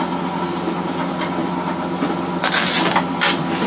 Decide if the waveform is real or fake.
real